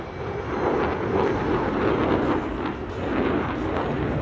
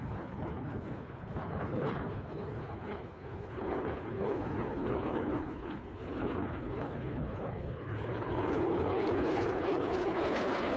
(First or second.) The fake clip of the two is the second